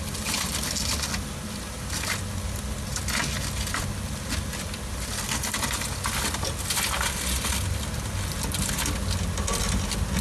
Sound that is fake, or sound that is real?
real